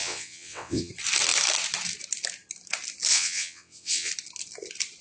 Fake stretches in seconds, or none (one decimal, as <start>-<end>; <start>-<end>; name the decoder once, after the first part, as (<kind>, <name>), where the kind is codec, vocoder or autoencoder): 0.0-0.9 (vocoder, WaveNeXt); 3.1-4.1